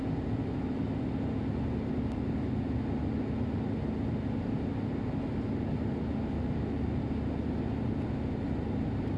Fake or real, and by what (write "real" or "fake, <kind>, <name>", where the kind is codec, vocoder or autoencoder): real